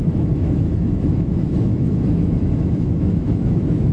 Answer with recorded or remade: remade